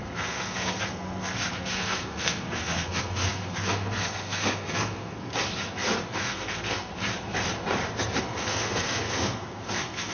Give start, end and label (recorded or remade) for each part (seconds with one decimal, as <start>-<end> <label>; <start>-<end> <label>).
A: 0.0-5.3 remade; 5.3-6.1 recorded; 6.1-6.9 remade; 6.9-8.2 recorded; 8.2-10.1 remade